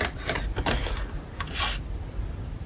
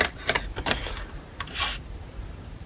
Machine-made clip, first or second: second